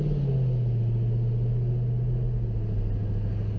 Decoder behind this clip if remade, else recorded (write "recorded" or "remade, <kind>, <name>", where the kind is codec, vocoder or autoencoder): recorded